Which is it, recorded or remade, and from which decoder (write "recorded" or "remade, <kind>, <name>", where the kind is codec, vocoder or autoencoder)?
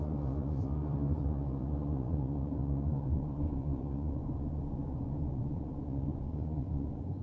remade, vocoder, Vocos